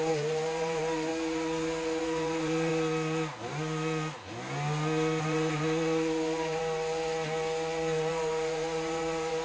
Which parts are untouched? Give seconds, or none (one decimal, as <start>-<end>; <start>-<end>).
1.1-2.0; 2.7-5.2; 6.6-8.1